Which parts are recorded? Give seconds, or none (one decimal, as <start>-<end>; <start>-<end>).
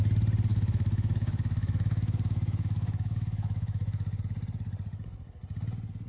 0.0-0.5; 4.2-6.1